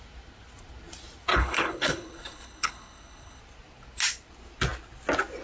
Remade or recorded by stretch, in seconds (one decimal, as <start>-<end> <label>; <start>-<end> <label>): 0.0-1.3 recorded; 1.3-3.4 remade; 3.4-5.4 recorded